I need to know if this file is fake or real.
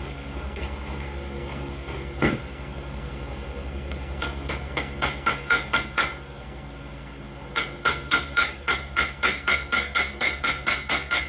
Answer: fake